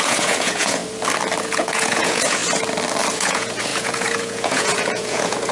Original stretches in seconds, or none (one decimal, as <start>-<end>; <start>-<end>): 0.8-1.4; 2.4-3.1